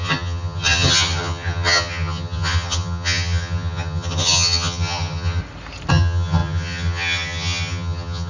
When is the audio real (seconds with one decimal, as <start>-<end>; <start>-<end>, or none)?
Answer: 5.4-5.9